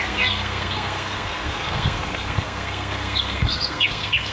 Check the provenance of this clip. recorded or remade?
remade